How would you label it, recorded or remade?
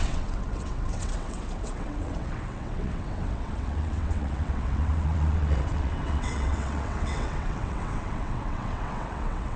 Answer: remade